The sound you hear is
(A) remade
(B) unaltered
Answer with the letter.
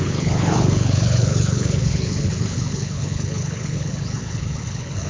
A